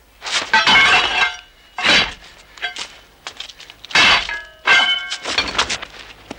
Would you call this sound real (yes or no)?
yes